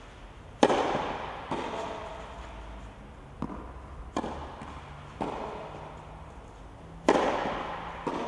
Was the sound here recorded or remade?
recorded